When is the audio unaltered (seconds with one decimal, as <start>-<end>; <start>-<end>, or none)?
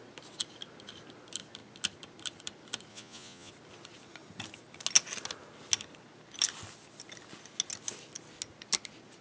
0.0-2.9; 3.5-9.2